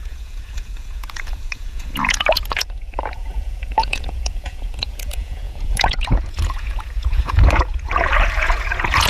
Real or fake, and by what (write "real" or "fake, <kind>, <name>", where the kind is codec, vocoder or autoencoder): fake, vocoder, Vocos